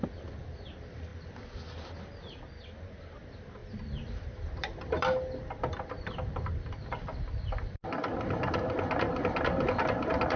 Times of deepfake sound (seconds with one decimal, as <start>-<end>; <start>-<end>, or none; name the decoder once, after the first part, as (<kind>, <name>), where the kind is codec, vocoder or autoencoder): none